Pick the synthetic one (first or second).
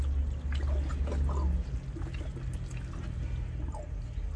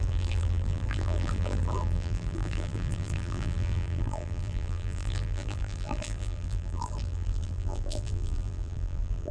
second